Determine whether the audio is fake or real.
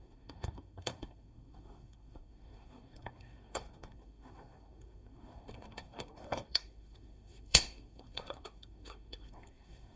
fake